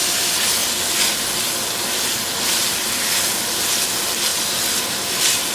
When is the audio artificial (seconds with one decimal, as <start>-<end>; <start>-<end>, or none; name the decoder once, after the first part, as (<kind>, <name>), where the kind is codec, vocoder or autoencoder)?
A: none